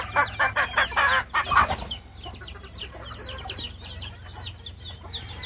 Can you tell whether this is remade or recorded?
recorded